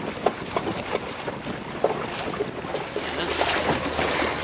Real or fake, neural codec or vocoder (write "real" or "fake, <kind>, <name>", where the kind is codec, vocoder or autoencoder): real